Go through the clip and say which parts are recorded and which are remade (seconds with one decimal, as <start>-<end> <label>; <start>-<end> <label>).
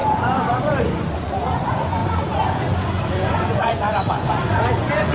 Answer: 0.0-5.1 remade